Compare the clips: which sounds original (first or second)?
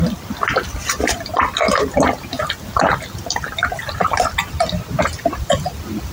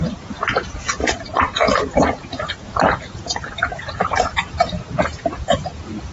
first